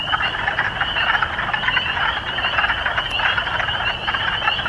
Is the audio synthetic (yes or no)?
no